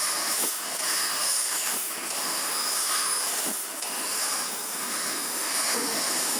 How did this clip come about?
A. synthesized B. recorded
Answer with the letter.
A